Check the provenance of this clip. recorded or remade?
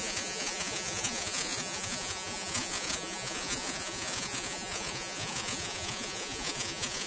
remade